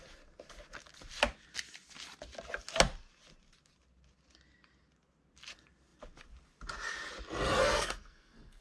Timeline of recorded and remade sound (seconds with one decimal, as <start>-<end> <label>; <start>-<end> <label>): 0.0-7.6 recorded; 7.6-8.6 remade